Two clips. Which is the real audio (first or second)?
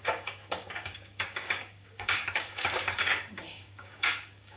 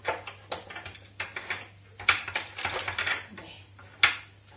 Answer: second